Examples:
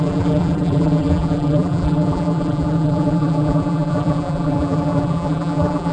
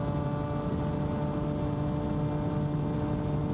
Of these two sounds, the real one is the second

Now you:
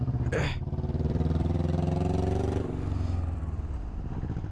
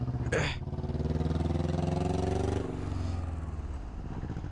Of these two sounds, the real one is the second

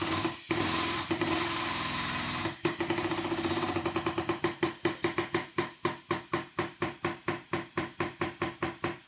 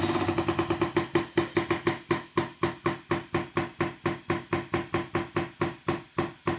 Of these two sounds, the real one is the second